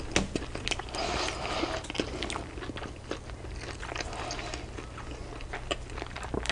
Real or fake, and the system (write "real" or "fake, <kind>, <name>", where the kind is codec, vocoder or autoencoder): real